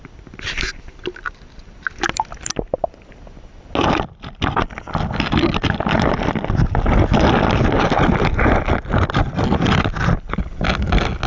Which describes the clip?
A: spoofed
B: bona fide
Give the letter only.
B